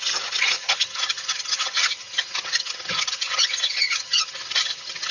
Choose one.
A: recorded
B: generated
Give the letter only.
B